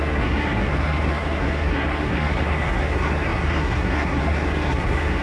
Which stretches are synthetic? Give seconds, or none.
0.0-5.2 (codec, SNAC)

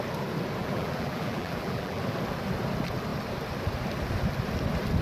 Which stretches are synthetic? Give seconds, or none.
0.6-2.0 (vocoder, BigVGAN v2)

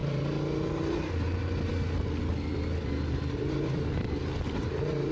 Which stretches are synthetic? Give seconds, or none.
none

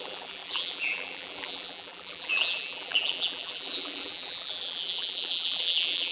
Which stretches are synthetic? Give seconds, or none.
0.0-6.1 (vocoder, BigVGAN v2)

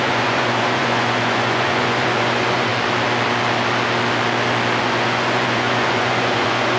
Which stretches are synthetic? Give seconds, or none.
0.0-2.7 (vocoder, Vocos); 4.8-6.8